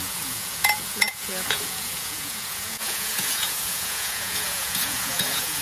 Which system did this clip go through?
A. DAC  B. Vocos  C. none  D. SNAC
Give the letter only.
B